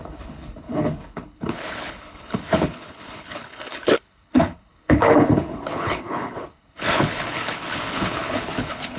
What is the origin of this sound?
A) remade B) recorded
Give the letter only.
A